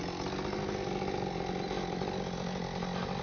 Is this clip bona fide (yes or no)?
yes